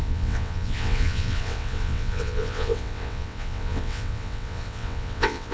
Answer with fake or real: fake